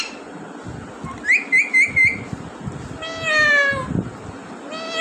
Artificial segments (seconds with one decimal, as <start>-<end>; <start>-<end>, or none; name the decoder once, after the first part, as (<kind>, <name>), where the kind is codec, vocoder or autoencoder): none